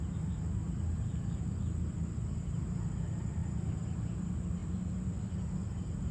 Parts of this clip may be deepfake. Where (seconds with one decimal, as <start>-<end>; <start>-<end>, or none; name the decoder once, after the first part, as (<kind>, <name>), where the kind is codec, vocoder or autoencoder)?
none